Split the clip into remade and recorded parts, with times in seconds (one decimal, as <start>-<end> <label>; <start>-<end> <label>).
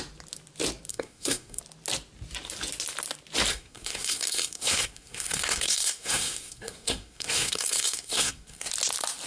0.0-0.9 recorded; 0.9-1.6 remade; 1.6-3.5 recorded; 3.5-8.7 remade; 8.7-9.3 recorded